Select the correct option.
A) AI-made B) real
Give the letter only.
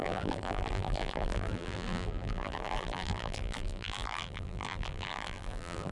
A